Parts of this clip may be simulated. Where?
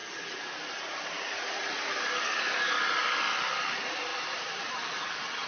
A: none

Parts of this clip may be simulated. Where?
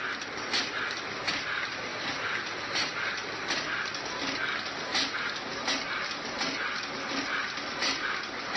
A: none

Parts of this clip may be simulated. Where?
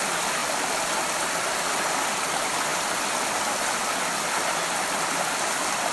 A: none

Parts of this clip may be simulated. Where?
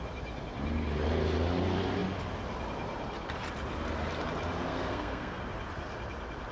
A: 4.7-5.4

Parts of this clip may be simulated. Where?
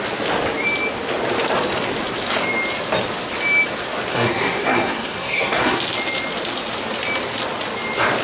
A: 4.1-5.8